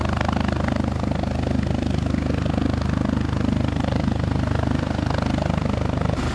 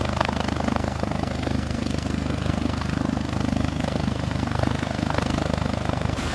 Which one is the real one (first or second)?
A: first